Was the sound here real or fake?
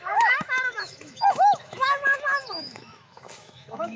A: fake